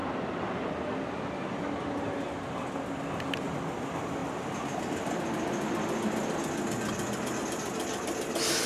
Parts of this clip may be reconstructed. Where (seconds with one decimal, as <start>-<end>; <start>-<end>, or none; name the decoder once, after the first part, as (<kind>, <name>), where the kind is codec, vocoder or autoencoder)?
none